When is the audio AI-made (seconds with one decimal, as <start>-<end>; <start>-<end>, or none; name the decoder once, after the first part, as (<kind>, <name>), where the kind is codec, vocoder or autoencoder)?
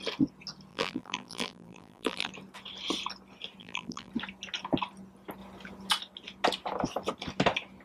0.7-2.3 (vocoder, BigVGAN v2); 3.6-4.1